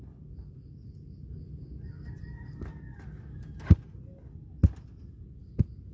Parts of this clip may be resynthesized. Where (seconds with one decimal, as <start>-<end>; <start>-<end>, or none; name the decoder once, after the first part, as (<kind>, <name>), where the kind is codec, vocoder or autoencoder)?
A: none